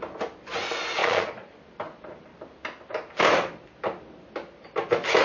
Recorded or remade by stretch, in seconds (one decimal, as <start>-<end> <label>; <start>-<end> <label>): 0.0-1.0 recorded; 1.0-1.6 remade; 1.6-5.2 recorded